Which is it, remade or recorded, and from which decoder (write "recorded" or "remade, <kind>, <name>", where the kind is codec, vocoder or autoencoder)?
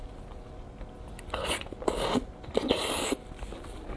recorded